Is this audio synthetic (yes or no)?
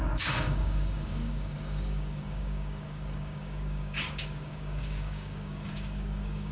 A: yes